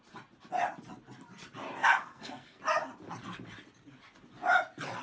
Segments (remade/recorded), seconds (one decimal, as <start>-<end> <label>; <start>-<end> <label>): 0.0-1.8 recorded; 1.8-2.6 remade; 2.6-5.0 recorded